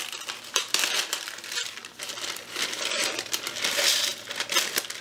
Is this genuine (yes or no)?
no